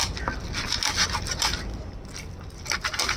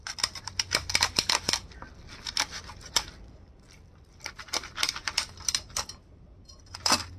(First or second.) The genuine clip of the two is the first